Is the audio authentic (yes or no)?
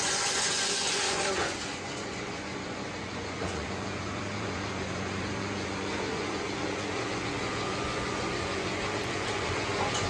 no